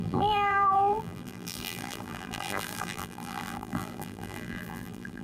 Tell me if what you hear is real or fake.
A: fake